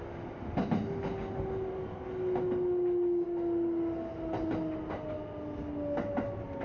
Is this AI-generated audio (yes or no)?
no